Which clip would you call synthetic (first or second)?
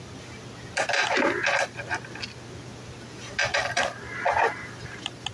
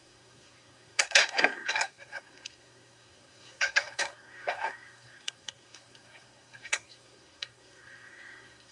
second